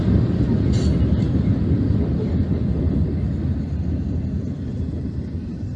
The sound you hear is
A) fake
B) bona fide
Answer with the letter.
B